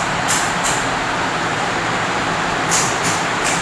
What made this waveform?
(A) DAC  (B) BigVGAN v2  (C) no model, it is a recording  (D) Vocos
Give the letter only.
B